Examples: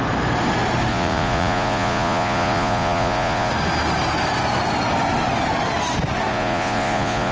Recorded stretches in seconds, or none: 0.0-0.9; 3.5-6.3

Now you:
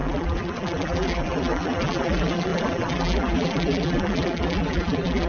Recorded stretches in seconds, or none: none

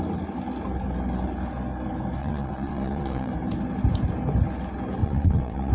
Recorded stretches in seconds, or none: 0.0-2.2; 3.3-5.0

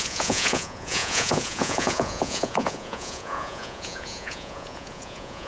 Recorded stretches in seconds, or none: none

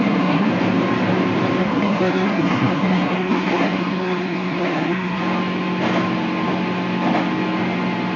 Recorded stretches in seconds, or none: 0.5-1.6; 5.2-8.2

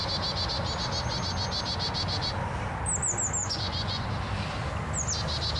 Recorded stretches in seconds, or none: 0.0-3.4; 4.1-5.6